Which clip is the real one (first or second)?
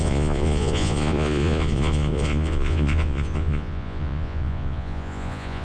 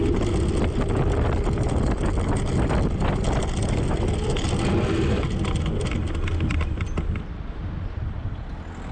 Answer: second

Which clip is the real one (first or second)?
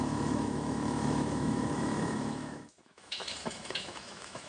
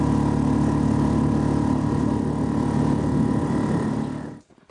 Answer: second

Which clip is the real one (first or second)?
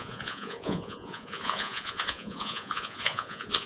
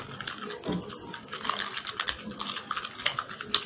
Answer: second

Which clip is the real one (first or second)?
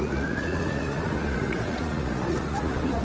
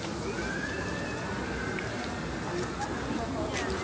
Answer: second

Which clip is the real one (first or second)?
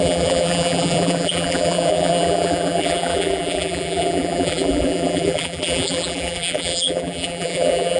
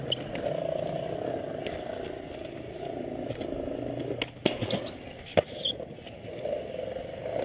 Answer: second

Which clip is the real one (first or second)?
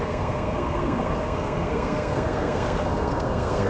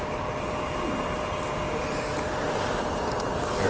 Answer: second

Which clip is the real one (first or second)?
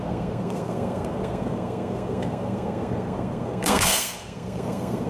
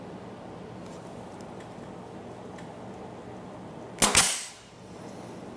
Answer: second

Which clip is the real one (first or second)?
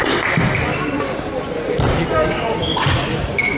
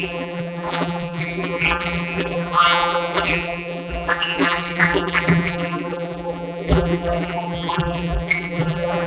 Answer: first